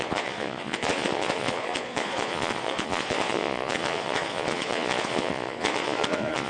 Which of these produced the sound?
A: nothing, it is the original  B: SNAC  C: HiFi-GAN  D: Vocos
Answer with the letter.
D